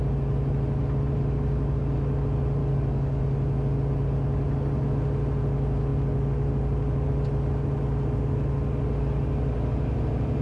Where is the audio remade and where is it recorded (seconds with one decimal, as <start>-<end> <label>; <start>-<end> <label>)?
0.0-2.6 recorded; 2.6-3.2 remade; 3.2-10.4 recorded